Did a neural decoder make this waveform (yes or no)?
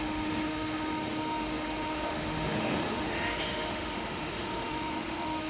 yes